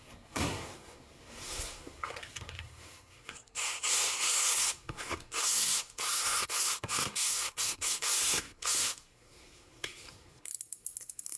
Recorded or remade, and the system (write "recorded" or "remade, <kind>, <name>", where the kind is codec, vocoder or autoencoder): remade, codec, SNAC